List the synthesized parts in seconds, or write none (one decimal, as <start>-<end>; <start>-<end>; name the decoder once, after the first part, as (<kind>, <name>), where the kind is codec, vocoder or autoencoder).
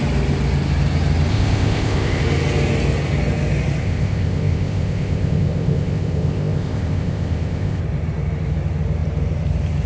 1.3-2.2 (codec, ZipCodec); 3.8-7.8